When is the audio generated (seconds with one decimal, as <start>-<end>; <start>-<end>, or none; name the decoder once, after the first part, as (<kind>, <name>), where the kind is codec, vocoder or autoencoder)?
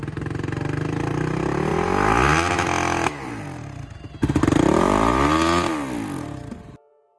none